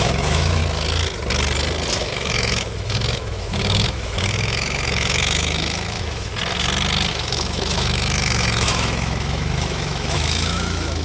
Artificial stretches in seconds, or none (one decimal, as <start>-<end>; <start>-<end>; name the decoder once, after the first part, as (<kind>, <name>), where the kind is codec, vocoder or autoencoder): 0.0-0.6 (autoencoder, DAC-VAE); 2.0-6.3; 7.1-11.0